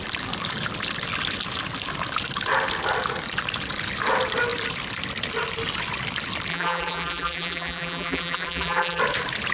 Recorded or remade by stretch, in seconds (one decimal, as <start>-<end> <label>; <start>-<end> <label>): 0.0-6.5 recorded; 6.5-9.0 remade; 9.0-9.5 recorded